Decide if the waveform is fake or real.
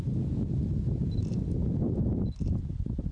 real